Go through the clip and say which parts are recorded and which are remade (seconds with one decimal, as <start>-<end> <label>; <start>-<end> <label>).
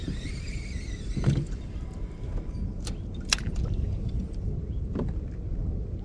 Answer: 0.0-0.9 remade; 0.9-6.0 recorded